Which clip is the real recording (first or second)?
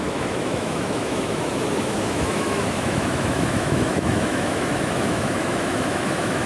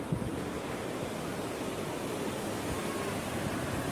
second